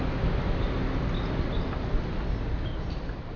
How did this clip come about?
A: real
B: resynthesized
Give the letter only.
A